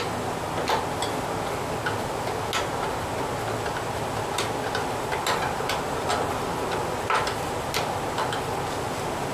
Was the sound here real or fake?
real